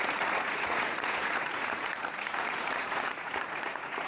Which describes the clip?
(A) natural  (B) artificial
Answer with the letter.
B